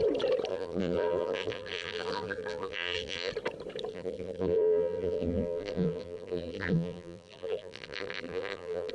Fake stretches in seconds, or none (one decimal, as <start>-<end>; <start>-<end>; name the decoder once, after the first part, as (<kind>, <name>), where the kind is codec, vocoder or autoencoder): 0.5-3.3 (vocoder, BigVGAN v2); 3.9-8.9